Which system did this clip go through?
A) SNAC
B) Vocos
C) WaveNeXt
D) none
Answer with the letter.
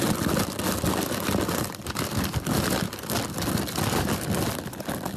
D